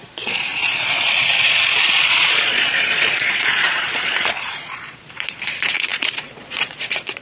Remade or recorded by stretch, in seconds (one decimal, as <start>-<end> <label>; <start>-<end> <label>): 0.0-7.2 remade